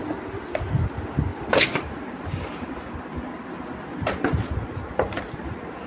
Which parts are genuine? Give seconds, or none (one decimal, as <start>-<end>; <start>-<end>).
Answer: 0.0-1.3; 2.9-5.9